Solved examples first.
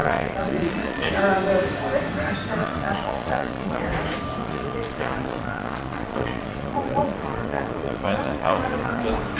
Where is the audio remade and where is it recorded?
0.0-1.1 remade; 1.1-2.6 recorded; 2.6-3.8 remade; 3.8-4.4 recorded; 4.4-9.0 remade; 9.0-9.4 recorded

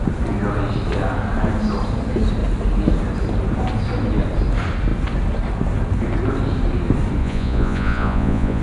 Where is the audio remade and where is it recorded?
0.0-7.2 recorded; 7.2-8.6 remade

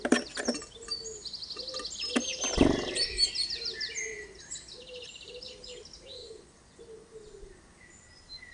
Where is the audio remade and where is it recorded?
0.0-6.2 recorded; 6.2-6.8 remade; 6.8-8.5 recorded

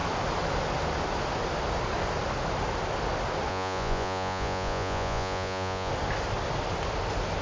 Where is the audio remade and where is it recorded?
0.0-3.5 recorded; 3.5-5.9 remade; 5.9-7.4 recorded

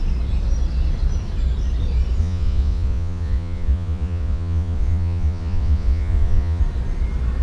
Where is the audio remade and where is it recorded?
0.0-2.2 recorded; 2.2-6.6 remade; 6.6-7.4 recorded

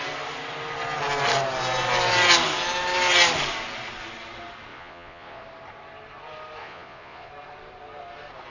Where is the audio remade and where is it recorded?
0.0-4.7 recorded; 4.7-5.4 remade; 5.4-6.6 recorded; 6.6-7.3 remade; 7.3-8.5 recorded

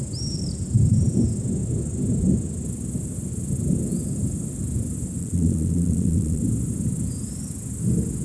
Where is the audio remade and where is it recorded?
0.0-5.2 recorded; 5.2-6.4 remade; 6.4-8.2 recorded

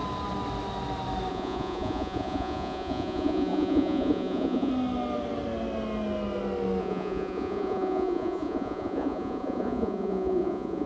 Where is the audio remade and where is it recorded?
0.0-1.3 recorded; 1.3-4.7 remade; 4.7-6.8 recorded; 6.8-10.9 remade